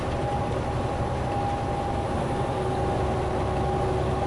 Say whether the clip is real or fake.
real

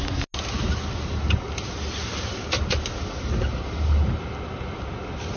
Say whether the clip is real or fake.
real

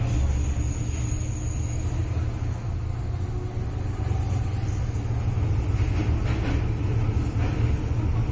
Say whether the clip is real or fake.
real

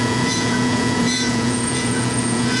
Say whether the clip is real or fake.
fake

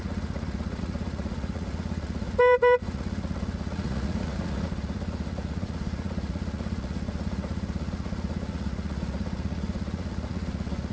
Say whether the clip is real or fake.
fake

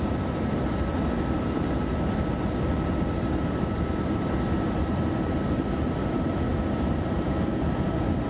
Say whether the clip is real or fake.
real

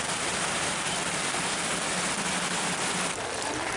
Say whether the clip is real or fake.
real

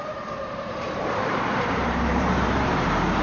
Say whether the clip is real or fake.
fake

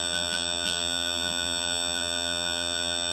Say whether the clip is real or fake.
fake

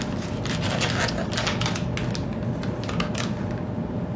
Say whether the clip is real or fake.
real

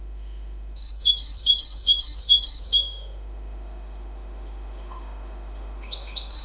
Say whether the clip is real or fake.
fake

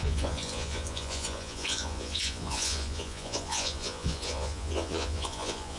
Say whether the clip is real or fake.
fake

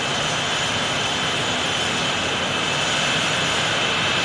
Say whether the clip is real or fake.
real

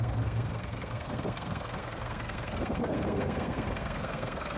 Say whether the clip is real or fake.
fake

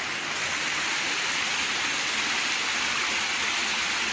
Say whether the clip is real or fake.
real